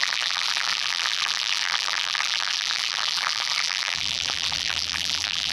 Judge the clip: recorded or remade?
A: remade